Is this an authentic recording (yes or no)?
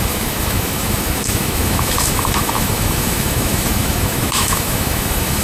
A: no